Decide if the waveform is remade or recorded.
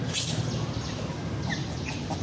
recorded